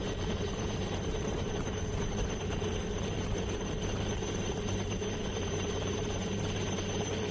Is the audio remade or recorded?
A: remade